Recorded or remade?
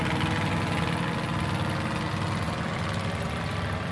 recorded